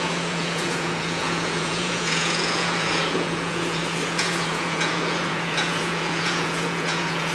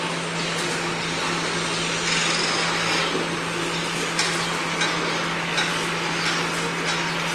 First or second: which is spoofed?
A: first